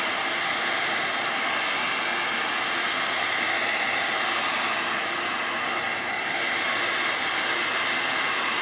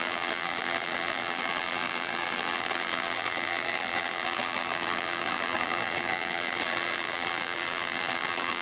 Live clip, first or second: first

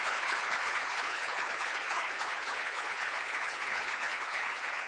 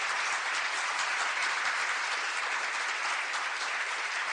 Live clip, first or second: second